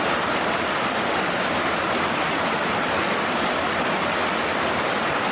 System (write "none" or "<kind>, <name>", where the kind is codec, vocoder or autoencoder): none